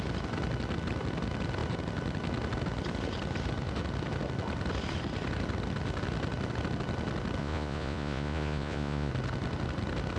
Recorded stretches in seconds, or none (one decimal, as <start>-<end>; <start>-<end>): 0.0-7.4; 9.1-10.2